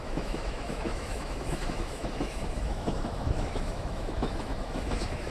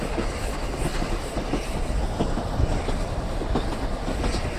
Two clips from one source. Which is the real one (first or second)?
second